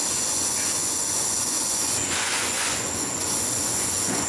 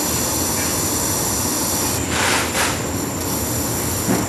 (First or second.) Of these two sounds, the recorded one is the second